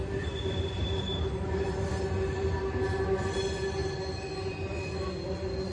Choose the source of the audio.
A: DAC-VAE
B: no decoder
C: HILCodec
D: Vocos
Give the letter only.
B